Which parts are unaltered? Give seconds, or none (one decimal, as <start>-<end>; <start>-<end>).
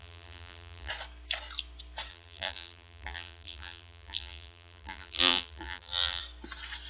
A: 0.9-2.1; 6.2-6.9